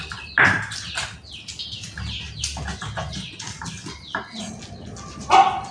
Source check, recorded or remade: recorded